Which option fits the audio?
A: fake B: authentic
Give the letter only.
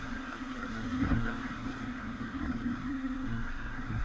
A